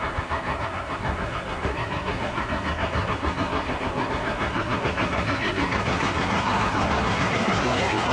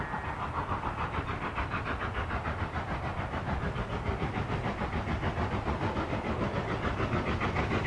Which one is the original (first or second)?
second